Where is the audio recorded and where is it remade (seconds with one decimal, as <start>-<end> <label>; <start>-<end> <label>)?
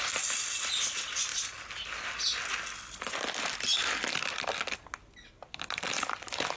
0.0-6.6 recorded